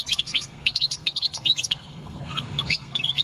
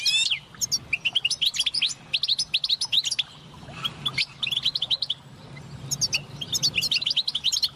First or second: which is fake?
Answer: first